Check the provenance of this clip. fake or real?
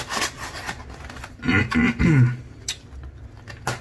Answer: real